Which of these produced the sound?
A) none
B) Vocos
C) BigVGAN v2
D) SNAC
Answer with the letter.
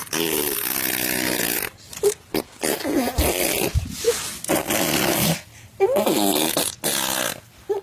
A